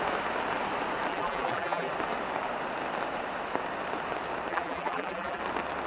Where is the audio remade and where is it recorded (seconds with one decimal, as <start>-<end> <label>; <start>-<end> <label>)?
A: 0.0-1.1 recorded; 1.1-1.9 remade; 1.9-4.5 recorded; 4.5-5.4 remade; 5.4-5.9 recorded